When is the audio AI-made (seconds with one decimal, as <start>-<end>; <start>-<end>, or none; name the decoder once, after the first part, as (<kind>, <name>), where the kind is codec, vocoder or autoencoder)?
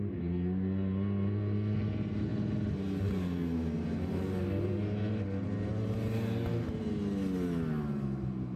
none